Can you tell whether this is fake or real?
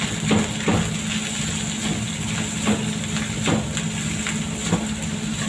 real